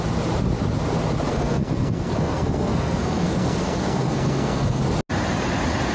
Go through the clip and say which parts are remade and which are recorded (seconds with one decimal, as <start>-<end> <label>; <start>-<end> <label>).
0.0-1.3 recorded; 1.3-4.8 remade; 4.8-5.9 recorded